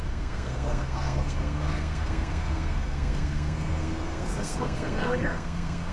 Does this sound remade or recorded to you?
remade